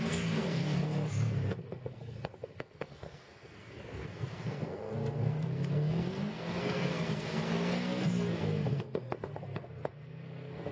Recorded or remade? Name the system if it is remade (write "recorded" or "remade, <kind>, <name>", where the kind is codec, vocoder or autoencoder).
remade, codec, SNAC